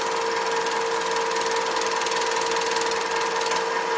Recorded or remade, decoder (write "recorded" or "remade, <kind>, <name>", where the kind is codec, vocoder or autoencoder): recorded